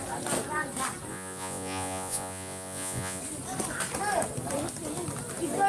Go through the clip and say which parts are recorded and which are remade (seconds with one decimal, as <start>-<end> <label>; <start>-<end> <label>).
0.0-1.1 recorded; 1.1-3.2 remade; 3.2-5.7 recorded